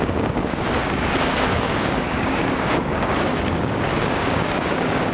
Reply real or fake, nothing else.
fake